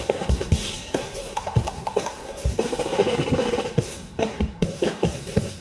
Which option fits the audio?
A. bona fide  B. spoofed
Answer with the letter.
B